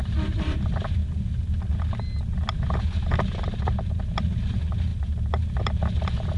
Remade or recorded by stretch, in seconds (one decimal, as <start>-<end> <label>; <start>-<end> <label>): 0.0-1.0 remade; 1.0-3.9 recorded; 3.9-4.9 remade; 4.9-5.6 recorded; 5.6-6.4 remade